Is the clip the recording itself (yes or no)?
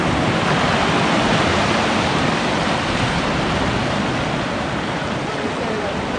yes